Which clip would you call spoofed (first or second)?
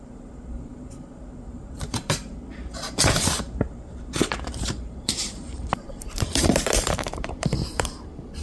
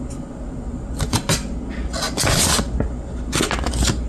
first